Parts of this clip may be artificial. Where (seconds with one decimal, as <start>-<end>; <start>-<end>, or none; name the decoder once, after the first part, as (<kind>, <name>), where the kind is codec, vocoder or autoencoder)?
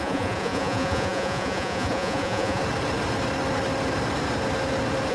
0.0-2.6 (vocoder, Vocos)